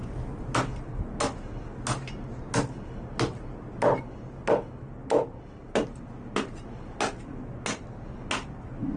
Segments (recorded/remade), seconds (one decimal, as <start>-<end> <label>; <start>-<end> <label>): 0.0-9.0 recorded